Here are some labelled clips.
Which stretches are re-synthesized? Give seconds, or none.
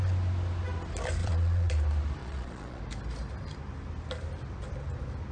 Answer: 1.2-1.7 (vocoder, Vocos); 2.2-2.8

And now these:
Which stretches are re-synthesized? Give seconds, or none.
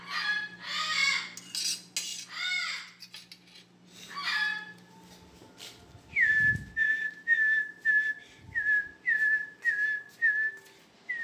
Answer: none